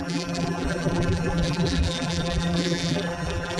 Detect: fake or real fake